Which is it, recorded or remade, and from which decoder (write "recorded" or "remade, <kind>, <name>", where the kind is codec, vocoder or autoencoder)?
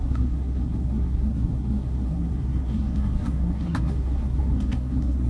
remade, codec, SNAC